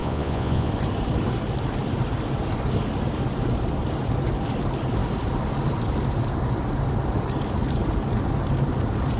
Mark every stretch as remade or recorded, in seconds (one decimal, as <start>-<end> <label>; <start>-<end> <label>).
0.0-0.7 remade; 0.7-9.2 recorded